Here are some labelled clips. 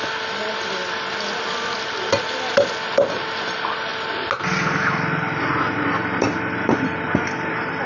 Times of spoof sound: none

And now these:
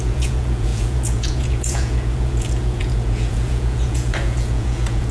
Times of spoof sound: 0.0-5.1 (vocoder, Vocos)

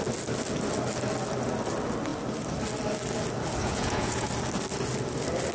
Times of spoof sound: 3.6-4.3 (vocoder, Vocos)

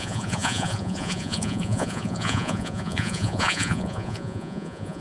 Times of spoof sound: 0.0-5.0 (vocoder, Vocos)

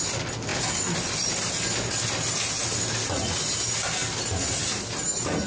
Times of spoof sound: none

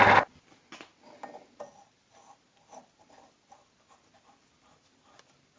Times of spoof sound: none

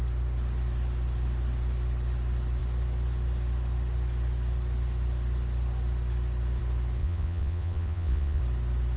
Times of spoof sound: 7.0-8.4 (vocoder, Vocos)